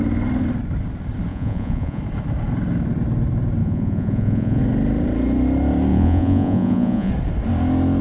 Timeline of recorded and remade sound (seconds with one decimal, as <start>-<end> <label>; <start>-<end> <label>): 0.0-1.3 recorded; 1.3-2.0 remade; 2.0-3.6 recorded; 3.6-4.6 remade; 4.6-5.9 recorded; 5.9-7.1 remade; 7.1-8.0 recorded